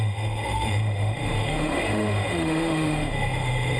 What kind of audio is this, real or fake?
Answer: fake